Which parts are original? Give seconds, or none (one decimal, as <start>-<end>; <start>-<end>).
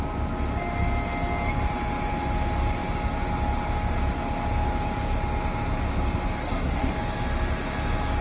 0.0-6.4; 6.9-8.2